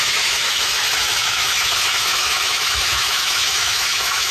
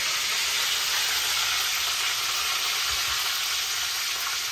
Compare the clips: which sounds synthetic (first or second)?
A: first